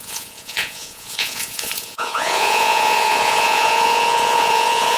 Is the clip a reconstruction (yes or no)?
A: yes